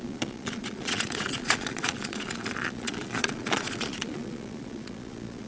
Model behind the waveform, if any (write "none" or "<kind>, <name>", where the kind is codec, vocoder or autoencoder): vocoder, Vocos